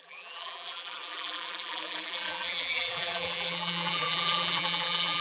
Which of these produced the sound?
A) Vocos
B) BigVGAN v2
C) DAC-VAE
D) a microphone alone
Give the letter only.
B